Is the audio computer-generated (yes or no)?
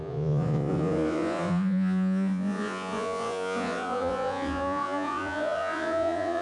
yes